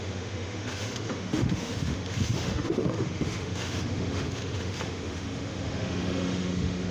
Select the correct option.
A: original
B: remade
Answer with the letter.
B